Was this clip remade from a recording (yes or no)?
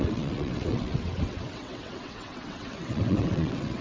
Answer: yes